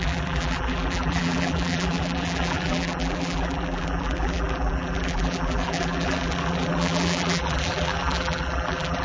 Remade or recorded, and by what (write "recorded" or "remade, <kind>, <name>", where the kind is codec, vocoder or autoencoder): remade, vocoder, BigVGAN v2